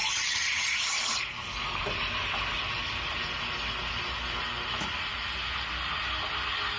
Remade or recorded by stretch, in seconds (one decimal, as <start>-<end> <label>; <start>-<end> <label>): 0.0-6.8 recorded